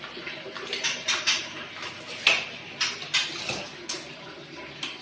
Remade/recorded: recorded